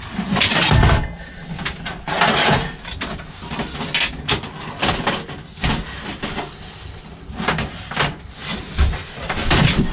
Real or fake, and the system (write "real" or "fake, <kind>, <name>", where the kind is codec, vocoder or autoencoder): real